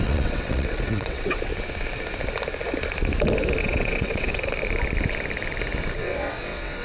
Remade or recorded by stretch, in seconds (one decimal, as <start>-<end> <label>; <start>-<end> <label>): 0.0-1.5 remade; 1.5-3.6 recorded; 3.6-4.3 remade; 4.3-6.0 recorded; 6.0-6.8 remade